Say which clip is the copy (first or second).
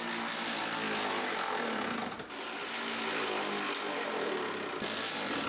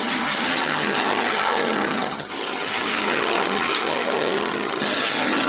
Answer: second